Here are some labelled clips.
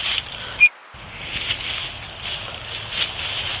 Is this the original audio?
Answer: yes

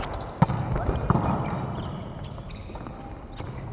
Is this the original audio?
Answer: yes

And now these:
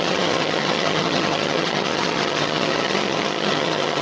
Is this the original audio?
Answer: no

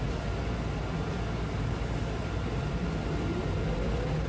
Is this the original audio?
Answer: yes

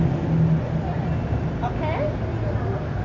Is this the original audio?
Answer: yes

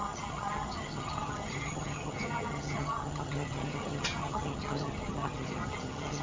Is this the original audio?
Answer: no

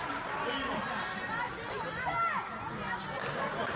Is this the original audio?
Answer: yes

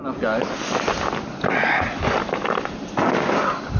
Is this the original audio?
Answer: yes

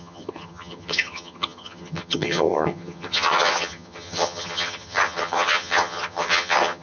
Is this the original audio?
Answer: no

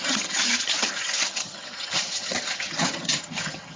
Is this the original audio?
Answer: no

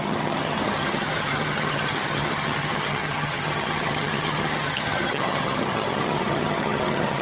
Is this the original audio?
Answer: no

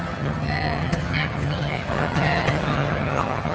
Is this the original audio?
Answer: no